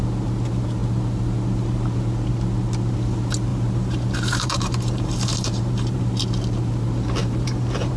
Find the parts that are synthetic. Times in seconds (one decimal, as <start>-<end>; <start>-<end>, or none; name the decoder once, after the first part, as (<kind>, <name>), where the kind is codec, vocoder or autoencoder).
3.5-6.0 (vocoder, BigVGAN v2); 7.2-8.0